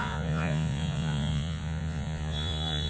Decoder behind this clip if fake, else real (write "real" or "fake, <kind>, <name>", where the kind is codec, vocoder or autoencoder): fake, vocoder, Vocos